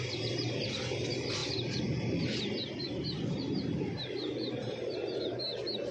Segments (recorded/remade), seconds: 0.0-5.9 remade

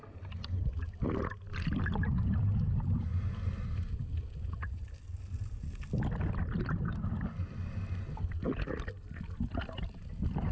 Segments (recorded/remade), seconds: 0.0-10.5 recorded

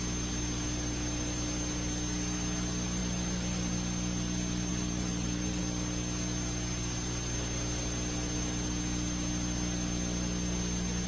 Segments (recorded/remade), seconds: 0.0-3.0 recorded; 3.0-3.7 remade; 3.7-4.7 recorded; 4.7-5.6 remade; 5.6-11.1 recorded

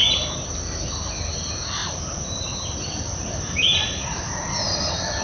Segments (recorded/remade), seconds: 0.0-1.8 recorded; 1.8-5.2 remade

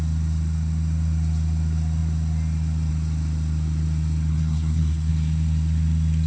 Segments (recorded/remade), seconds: 0.0-4.3 recorded; 4.3-5.1 remade; 5.1-6.3 recorded